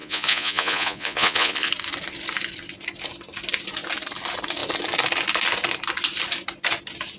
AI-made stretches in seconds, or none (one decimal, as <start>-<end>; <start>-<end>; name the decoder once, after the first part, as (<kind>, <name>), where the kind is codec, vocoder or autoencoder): 0.0-1.7 (vocoder, Vocos)

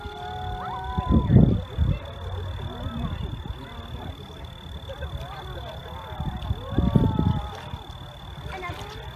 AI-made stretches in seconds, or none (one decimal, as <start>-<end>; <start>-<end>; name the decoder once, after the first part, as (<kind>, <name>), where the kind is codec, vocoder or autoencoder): none

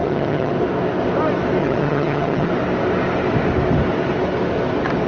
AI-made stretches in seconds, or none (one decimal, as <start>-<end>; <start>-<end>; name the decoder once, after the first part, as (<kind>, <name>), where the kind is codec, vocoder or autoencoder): 0.0-0.5 (vocoder, HiFi-GAN); 1.6-2.5

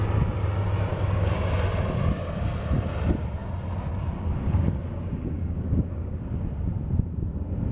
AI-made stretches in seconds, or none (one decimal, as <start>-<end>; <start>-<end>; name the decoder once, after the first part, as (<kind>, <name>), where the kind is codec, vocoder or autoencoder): 0.9-1.5 (codec, DAC); 4.0-6.1

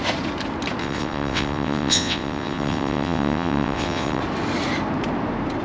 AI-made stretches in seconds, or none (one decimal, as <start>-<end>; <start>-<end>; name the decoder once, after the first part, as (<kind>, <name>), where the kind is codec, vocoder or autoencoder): 0.8-4.2 (vocoder, WaveNeXt)

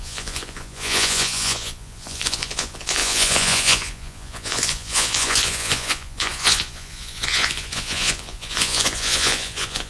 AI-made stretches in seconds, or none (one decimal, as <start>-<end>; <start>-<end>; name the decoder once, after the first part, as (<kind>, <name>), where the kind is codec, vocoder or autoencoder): 0.0-9.9 (vocoder, Vocos)

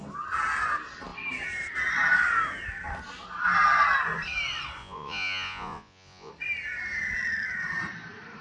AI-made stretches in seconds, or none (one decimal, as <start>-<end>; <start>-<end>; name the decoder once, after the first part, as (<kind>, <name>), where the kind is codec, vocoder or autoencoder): 4.8-6.3 (vocoder, Vocos)